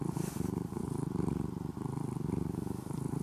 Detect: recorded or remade recorded